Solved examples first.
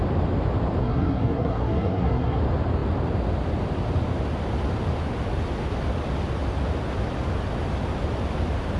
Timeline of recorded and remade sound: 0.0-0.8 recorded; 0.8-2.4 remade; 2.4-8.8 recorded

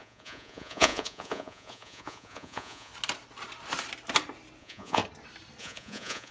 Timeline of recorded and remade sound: 0.0-2.9 remade; 2.9-4.6 recorded; 4.6-5.0 remade; 5.0-5.6 recorded; 5.6-6.3 remade

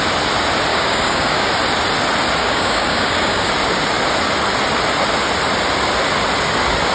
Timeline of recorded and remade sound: 0.0-0.7 recorded; 0.7-1.5 remade; 1.5-2.4 recorded; 2.4-3.5 remade; 3.5-6.9 recorded